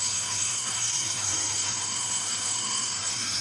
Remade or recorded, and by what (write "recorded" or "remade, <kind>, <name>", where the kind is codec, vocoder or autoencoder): remade, codec, SNAC